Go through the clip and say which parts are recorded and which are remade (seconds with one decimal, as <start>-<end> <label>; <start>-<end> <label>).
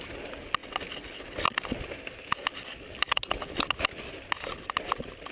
0.0-5.3 recorded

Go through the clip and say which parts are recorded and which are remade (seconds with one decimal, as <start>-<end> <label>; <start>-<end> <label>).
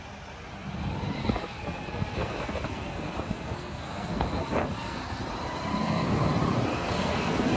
0.0-1.2 recorded; 1.2-5.2 remade; 5.2-5.8 recorded; 5.8-6.3 remade; 6.3-6.7 recorded; 6.7-7.6 remade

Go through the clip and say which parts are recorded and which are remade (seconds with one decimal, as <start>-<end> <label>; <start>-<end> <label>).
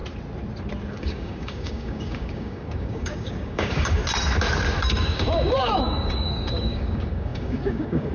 0.0-0.9 recorded; 0.9-4.0 remade; 4.0-5.0 recorded; 5.0-8.1 remade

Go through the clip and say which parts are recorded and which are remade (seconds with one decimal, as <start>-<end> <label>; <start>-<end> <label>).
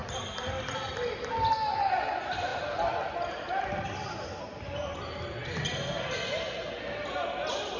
0.0-1.5 remade; 1.5-2.5 recorded; 2.5-4.4 remade; 4.4-7.8 recorded